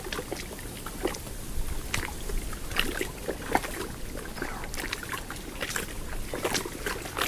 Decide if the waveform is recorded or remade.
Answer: recorded